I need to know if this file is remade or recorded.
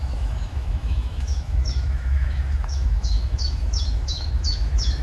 remade